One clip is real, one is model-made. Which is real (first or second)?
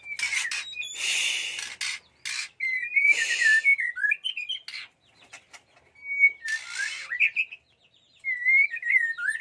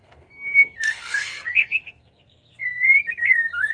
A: first